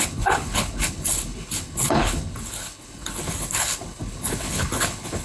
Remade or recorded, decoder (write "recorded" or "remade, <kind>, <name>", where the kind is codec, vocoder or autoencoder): remade, codec, HILCodec